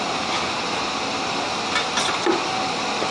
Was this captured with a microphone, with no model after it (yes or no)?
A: yes